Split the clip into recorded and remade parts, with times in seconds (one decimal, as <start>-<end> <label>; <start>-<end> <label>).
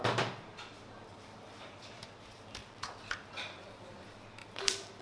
0.0-1.1 recorded; 1.1-2.1 remade; 2.1-2.6 recorded; 2.6-4.0 remade; 4.0-4.4 recorded; 4.4-5.0 remade